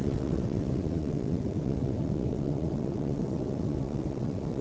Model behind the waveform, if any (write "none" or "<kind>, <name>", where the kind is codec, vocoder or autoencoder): vocoder, WaveNeXt